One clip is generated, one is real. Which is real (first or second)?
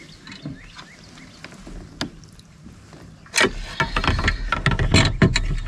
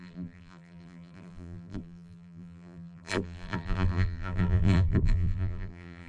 first